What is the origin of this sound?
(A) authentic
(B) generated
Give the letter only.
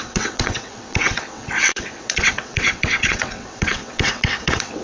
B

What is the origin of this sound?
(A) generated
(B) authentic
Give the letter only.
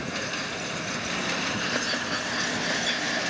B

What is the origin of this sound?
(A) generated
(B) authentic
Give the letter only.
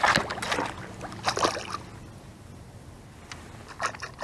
B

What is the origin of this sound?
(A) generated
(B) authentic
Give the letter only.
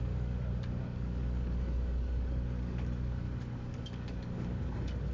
A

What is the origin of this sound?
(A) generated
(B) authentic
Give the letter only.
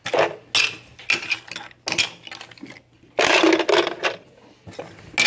B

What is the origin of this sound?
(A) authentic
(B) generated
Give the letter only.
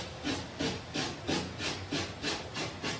A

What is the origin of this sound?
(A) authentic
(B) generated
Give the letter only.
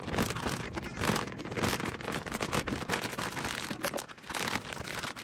A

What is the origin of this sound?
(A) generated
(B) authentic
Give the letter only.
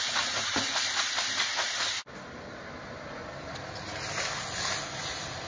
B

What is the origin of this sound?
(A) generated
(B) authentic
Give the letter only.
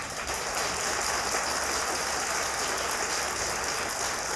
B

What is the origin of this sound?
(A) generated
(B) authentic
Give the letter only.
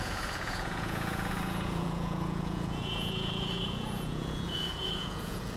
A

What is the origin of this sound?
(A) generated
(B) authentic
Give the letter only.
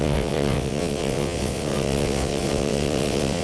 A